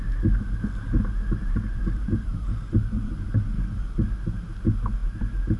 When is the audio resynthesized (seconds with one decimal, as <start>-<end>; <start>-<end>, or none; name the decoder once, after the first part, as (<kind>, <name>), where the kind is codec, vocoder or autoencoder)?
1.4-3.3 (vocoder, BigVGAN v2); 5.0-5.6